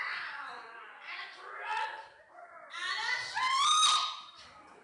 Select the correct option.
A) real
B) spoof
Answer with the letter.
A